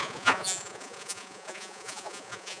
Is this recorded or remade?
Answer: remade